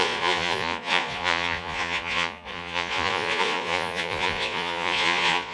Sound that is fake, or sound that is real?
fake